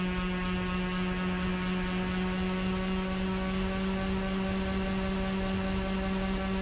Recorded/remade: recorded